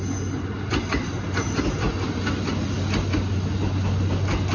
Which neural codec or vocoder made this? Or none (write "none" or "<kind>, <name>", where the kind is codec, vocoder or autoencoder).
none